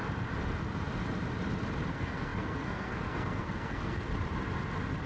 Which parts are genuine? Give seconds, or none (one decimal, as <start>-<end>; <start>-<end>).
0.0-1.9; 4.1-5.1